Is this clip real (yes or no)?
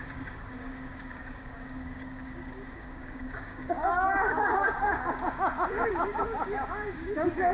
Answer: no